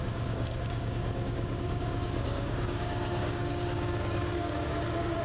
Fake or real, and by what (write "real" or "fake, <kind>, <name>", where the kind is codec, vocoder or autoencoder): fake, codec, DAC